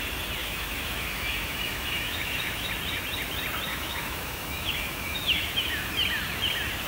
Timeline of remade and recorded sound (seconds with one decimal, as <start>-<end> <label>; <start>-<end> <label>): 0.0-0.4 recorded; 0.4-2.7 remade; 2.7-3.7 recorded; 3.7-5.9 remade; 5.9-6.9 recorded